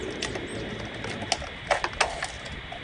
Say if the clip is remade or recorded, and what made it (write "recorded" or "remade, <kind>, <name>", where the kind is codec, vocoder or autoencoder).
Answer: recorded